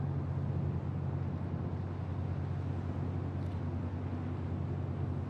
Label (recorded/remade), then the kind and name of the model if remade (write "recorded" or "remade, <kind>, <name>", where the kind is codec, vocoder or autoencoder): recorded